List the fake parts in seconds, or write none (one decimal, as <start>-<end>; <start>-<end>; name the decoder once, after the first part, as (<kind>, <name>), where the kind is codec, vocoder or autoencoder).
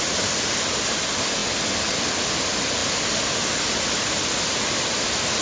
none